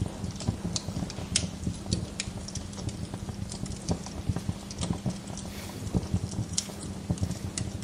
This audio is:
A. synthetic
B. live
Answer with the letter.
B